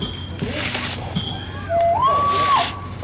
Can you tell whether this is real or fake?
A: real